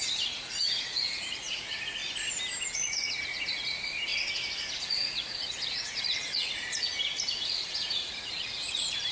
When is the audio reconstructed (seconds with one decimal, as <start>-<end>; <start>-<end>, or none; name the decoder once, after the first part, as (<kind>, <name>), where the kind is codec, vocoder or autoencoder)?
0.0-2.0 (vocoder, Vocos); 2.7-4.1; 4.8-6.9; 7.7-9.1